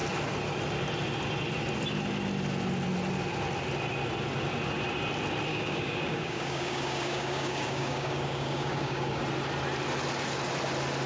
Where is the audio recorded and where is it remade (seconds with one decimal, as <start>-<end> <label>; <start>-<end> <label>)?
0.0-5.5 recorded; 5.5-9.2 remade; 9.2-11.1 recorded